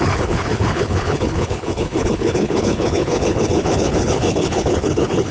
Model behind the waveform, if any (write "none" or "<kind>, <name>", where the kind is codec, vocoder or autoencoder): codec, HILCodec